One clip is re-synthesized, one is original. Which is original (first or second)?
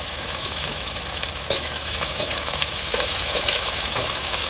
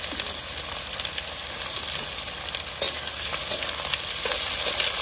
second